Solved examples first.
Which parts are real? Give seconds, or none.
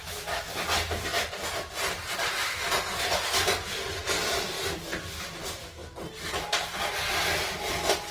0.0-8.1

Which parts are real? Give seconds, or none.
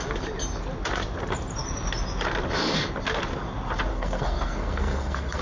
0.0-3.9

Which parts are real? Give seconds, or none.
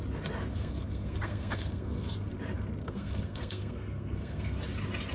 0.0-0.5; 2.3-2.8; 4.6-5.1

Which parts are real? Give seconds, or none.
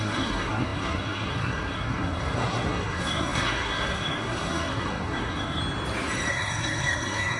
5.6-6.3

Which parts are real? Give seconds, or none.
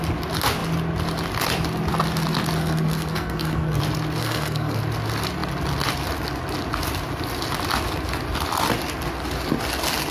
0.0-2.6; 3.8-4.2; 4.8-10.1